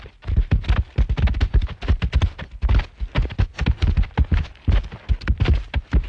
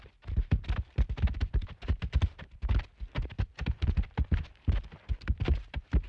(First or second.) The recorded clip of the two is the first